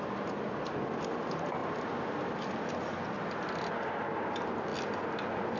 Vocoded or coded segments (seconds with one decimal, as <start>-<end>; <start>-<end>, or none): none